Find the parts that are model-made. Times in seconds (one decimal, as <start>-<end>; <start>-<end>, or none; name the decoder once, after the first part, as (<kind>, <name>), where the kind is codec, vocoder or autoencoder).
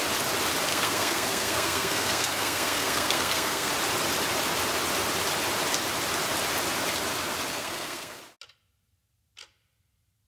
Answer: 0.7-3.7 (codec, SNAC); 7.5-8.2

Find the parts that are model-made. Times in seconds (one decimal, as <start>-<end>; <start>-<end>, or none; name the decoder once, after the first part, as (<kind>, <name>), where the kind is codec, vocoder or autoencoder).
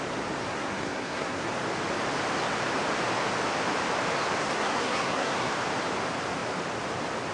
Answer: 0.5-1.5 (codec, SNAC); 4.4-5.5